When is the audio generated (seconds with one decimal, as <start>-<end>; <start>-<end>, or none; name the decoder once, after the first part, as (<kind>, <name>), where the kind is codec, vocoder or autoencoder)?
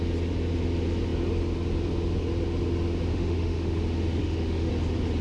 3.1-3.8 (autoencoder, DAC-VAE); 4.2-4.7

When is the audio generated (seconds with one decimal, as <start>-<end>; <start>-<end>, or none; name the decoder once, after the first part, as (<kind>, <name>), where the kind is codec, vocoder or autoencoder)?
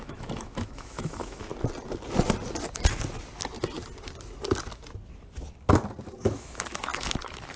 0.0-1.5 (autoencoder, DAC-VAE); 6.1-7.6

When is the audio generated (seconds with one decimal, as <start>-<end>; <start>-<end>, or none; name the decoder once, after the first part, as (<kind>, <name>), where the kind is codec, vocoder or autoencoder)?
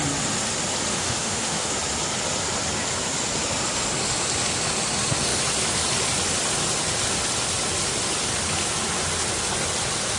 0.9-1.7 (autoencoder, DAC-VAE)